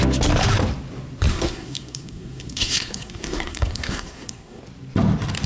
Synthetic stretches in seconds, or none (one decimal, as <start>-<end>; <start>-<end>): 1.3-4.6